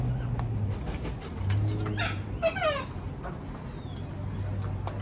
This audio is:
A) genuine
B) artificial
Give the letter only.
A